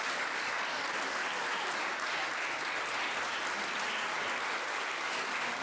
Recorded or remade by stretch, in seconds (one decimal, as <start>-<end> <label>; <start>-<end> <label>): 0.0-1.2 remade; 1.2-4.6 recorded; 4.6-5.6 remade